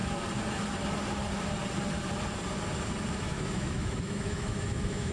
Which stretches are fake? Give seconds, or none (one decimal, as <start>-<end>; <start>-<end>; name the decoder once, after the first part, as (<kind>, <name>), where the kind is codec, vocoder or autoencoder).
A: 3.1-5.1 (autoencoder, DAC-VAE)

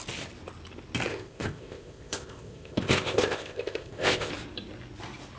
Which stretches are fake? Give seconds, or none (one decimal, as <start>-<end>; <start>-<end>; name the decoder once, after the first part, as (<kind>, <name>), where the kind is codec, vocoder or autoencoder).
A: 1.1-4.3 (codec, ZipCodec)

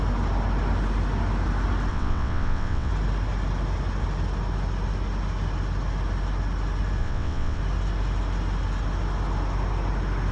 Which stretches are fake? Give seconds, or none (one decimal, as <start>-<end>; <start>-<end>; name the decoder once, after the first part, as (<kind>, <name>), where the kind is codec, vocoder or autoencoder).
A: 1.9-2.9 (vocoder, WaveNeXt); 7.0-7.6

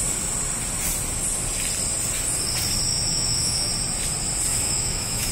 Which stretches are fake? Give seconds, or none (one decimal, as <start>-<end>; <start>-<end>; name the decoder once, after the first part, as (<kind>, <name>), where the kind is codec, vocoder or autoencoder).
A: 2.9-3.7 (autoencoder, DAC-VAE); 4.5-5.3